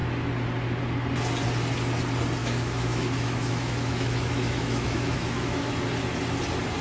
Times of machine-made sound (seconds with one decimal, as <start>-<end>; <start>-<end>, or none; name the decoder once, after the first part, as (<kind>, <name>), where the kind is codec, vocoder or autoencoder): 2.4-5.7 (autoencoder, DAC-VAE)